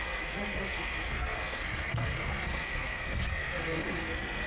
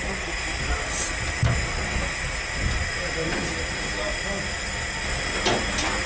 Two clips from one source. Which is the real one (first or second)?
second